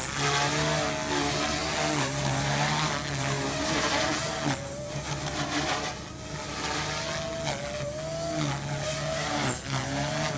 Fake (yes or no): no